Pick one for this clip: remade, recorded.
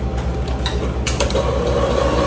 recorded